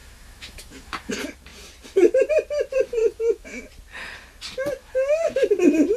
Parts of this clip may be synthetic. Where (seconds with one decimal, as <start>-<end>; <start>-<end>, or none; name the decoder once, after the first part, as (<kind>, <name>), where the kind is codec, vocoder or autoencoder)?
0.0-1.1 (autoencoder, DAC-VAE); 3.0-3.6; 4.8-5.5